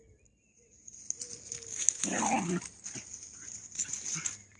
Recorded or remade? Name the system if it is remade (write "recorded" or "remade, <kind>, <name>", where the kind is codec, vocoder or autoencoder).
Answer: recorded